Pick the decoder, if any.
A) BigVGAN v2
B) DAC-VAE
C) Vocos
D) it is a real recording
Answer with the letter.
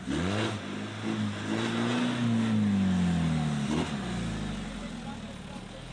D